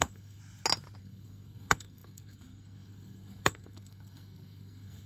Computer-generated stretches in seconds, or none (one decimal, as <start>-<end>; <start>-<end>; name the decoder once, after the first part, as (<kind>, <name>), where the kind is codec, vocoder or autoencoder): 0.0-0.4 (codec, SNAC); 1.0-5.1